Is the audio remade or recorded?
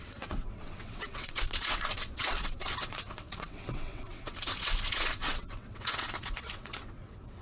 remade